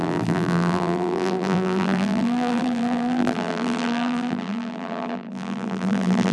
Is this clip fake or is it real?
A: fake